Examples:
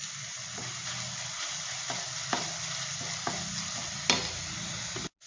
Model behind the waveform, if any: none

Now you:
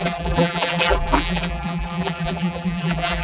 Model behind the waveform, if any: vocoder, BigVGAN v2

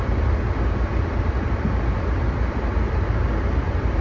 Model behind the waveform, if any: vocoder, BigVGAN v2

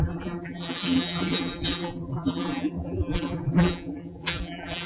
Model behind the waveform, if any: vocoder, BigVGAN v2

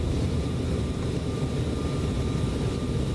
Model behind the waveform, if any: vocoder, BigVGAN v2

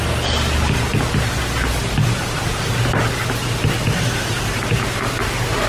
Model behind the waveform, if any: none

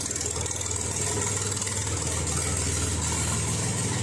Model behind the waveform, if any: none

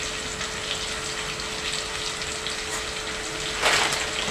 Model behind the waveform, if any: none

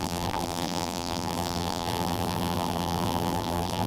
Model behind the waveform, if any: vocoder, BigVGAN v2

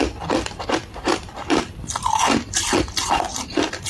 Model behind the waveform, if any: vocoder, BigVGAN v2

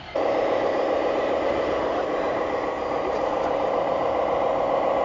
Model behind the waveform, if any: vocoder, BigVGAN v2